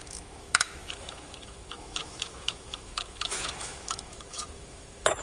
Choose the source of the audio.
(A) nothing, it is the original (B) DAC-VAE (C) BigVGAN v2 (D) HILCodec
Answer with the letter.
B